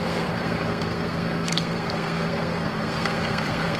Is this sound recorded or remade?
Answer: remade